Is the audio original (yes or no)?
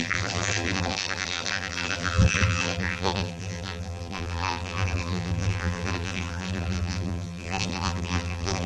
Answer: no